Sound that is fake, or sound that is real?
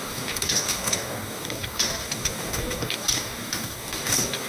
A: fake